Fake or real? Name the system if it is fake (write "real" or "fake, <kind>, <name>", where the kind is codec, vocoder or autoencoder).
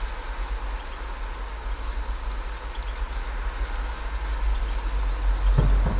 real